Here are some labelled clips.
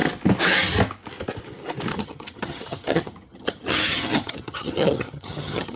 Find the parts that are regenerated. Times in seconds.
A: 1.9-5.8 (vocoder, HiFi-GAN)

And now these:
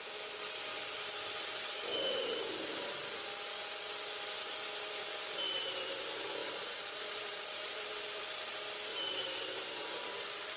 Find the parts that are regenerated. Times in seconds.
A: 6.4-8.2 (vocoder, BigVGAN v2); 8.9-10.6

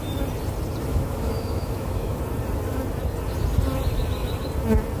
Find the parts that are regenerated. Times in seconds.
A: 0.9-2.2 (autoencoder, DAC-VAE)

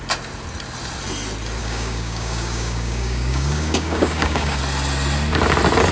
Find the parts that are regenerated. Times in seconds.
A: 1.6-4.6 (codec, DAC)

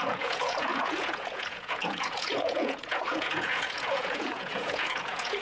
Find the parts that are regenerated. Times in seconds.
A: 0.0-5.4 (vocoder, Vocos)